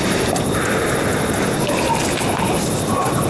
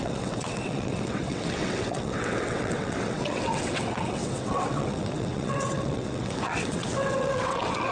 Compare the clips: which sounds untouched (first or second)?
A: first